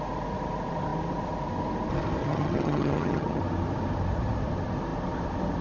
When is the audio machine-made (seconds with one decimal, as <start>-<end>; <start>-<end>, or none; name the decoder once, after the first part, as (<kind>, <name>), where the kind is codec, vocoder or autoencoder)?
2.2-3.4 (vocoder, HiFi-GAN)